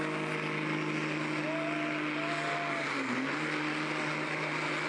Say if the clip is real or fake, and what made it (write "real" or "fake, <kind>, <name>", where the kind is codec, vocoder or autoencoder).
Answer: real